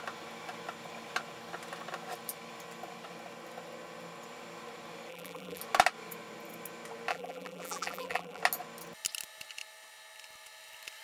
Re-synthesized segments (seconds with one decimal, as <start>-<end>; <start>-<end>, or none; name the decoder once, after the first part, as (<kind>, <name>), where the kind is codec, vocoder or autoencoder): 5.1-5.6 (vocoder, BigVGAN v2); 7.1-8.4